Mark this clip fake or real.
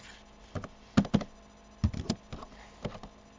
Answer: real